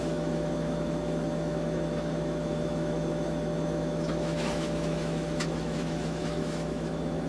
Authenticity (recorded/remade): remade